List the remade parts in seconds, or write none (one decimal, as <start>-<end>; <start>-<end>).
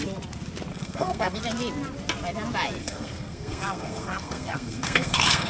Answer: 0.7-1.4; 2.8-5.5